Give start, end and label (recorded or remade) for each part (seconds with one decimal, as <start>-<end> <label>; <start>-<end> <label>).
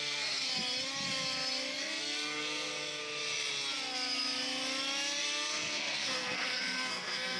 0.0-0.5 remade; 0.5-1.8 recorded; 1.8-3.0 remade; 3.0-5.2 recorded; 5.2-7.4 remade